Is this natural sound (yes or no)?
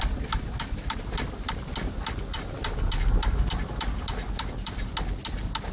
yes